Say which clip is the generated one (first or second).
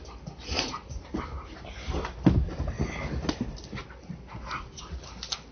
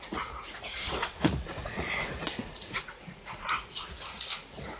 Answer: second